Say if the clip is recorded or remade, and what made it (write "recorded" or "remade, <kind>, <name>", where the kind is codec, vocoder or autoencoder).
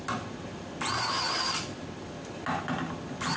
recorded